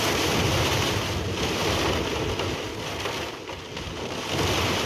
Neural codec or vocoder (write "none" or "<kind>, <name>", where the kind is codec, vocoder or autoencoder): none